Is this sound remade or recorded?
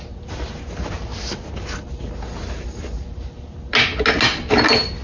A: recorded